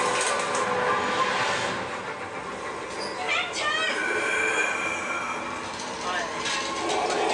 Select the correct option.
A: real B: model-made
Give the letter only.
A